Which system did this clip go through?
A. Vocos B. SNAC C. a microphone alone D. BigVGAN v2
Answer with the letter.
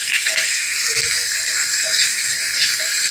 B